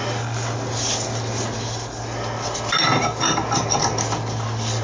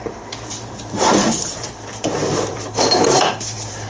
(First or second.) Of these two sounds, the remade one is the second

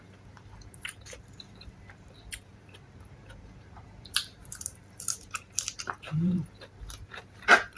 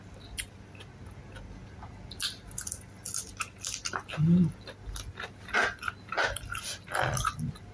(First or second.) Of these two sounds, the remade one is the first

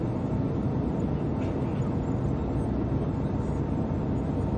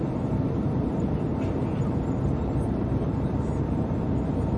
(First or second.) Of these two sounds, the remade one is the second